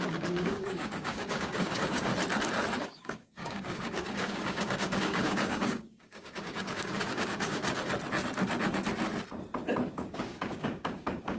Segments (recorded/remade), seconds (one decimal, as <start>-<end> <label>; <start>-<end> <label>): 0.0-2.1 remade; 2.1-2.8 recorded; 2.8-7.6 remade; 7.6-9.9 recorded; 9.9-11.4 remade